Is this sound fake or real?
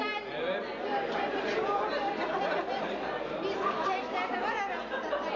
real